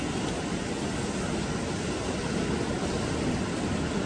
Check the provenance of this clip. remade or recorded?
recorded